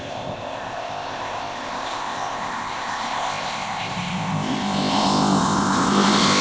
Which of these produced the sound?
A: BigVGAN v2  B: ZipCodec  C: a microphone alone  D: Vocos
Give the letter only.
B